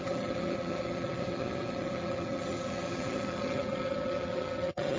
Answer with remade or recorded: remade